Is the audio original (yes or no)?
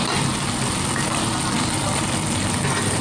yes